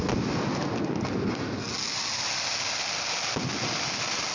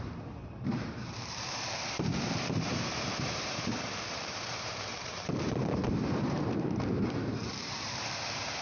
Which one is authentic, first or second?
first